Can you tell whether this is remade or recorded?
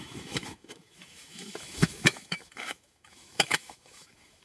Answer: remade